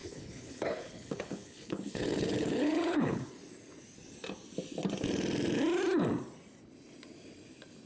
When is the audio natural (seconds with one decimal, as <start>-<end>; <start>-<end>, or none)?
3.3-7.9